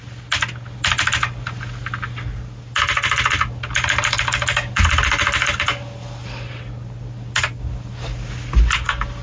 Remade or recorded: recorded